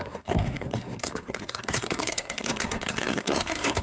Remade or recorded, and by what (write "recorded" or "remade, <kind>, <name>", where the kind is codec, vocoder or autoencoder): remade, codec, SNAC